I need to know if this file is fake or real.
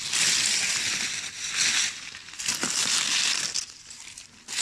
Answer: real